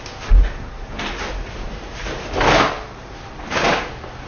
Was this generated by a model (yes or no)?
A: no